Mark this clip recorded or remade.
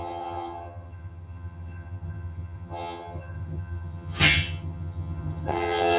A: remade